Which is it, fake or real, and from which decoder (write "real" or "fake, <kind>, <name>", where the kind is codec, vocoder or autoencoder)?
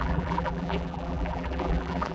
fake, vocoder, BigVGAN v2